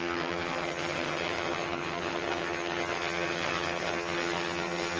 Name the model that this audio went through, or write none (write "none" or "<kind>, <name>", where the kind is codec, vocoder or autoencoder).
vocoder, HiFi-GAN